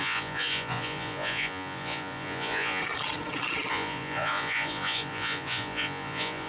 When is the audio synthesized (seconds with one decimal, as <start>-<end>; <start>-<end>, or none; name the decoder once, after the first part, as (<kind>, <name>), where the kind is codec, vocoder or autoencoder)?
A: 0.0-2.8 (vocoder, Vocos); 3.7-6.5